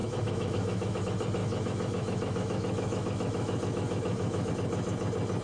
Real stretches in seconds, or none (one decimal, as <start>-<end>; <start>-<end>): 1.0-1.4; 4.5-5.4